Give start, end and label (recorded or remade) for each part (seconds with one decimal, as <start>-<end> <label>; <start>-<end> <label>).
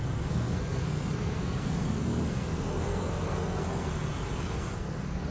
0.0-3.9 remade; 3.9-4.4 recorded; 4.4-5.3 remade